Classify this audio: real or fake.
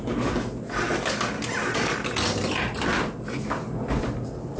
real